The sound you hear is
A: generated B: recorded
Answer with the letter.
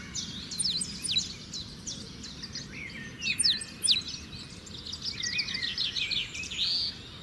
B